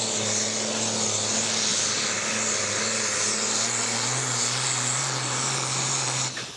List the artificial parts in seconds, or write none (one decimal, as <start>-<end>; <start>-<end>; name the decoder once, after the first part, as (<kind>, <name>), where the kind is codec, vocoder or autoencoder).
none